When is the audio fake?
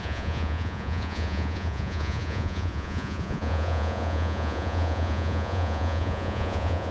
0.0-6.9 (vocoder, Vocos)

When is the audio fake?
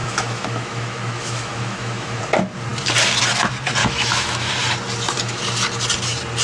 0.0-2.2 (autoencoder, DAC-VAE); 3.8-4.5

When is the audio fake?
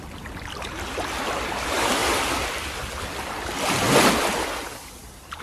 none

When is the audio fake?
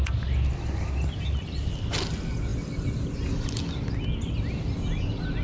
none